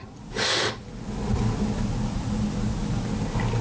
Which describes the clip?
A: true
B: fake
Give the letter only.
A